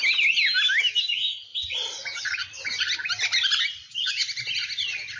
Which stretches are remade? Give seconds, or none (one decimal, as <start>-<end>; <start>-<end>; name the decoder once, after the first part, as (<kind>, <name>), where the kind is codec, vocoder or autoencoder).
none